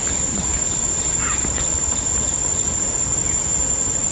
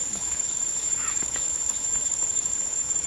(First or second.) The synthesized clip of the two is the second